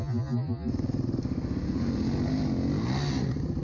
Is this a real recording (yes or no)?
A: yes